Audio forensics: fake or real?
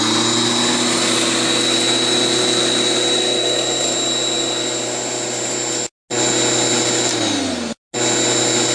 real